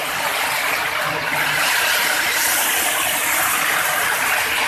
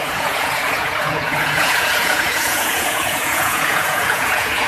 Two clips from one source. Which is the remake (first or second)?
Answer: second